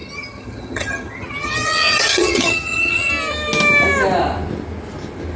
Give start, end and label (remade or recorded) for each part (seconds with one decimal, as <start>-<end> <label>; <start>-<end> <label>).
0.0-3.1 remade; 3.1-5.4 recorded